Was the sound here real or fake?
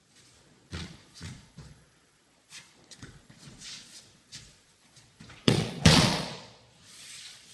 fake